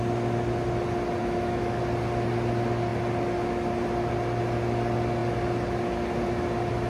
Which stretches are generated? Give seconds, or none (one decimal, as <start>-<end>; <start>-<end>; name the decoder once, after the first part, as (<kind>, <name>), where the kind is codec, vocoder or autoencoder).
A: 1.2-1.8 (autoencoder, DAC-VAE)